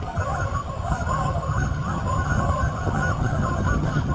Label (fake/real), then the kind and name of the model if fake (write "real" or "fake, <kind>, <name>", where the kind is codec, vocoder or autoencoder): fake, vocoder, HiFi-GAN